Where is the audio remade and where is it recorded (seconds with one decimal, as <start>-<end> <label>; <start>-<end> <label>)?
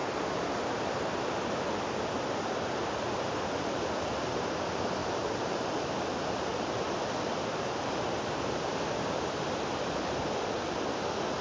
0.0-1.8 remade; 1.8-5.0 recorded; 5.0-9.4 remade; 9.4-11.4 recorded